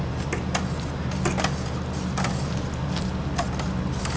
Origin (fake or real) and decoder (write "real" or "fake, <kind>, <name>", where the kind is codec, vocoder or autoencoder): real